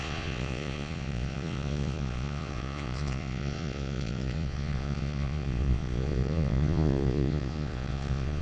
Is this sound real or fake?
fake